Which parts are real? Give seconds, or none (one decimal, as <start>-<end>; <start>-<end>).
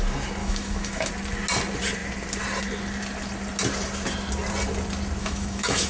0.0-0.4; 1.1-5.2